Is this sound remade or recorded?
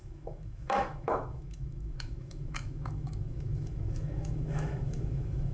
remade